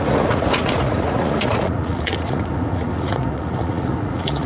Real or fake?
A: fake